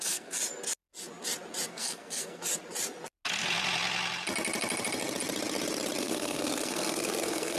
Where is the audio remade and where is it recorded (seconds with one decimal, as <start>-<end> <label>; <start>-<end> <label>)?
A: 0.0-0.4 remade; 0.4-1.7 recorded; 1.7-2.4 remade; 2.4-6.0 recorded; 6.0-7.6 remade